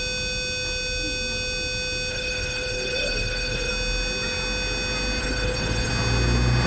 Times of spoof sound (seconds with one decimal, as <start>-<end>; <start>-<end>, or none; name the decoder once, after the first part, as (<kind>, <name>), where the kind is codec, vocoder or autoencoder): 2.1-3.7 (codec, HILCodec); 5.2-5.9